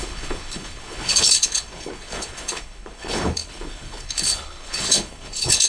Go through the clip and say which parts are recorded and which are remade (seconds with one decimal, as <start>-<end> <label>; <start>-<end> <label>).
0.0-5.7 remade